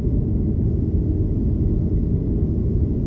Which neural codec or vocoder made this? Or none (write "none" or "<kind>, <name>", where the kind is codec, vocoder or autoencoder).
none